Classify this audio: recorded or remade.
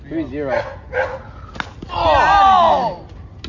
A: recorded